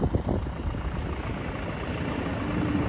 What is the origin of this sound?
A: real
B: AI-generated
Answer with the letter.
A